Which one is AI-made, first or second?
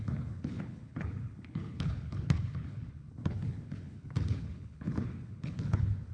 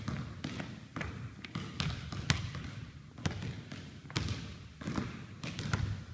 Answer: first